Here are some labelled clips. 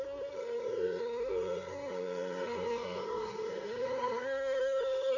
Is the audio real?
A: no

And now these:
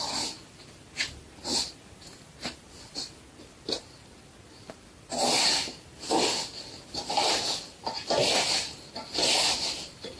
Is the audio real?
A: yes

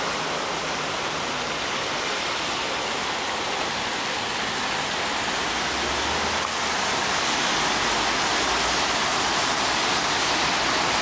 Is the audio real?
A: yes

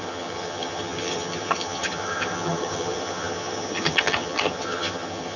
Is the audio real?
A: no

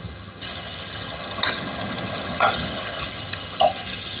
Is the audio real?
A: no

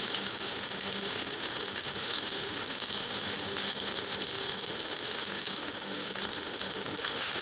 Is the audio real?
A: no